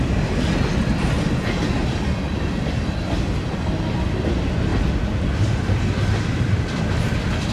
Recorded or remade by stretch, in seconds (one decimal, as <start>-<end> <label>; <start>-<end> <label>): 0.0-1.8 recorded; 1.8-3.4 remade; 3.4-4.7 recorded; 4.7-7.1 remade; 7.1-7.5 recorded